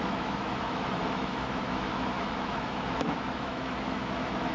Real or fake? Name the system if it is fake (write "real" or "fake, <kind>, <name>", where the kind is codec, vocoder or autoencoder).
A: fake, autoencoder, DAC-VAE